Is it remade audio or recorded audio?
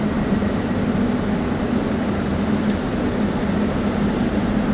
recorded